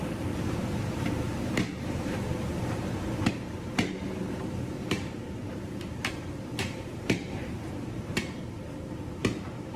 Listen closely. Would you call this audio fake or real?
fake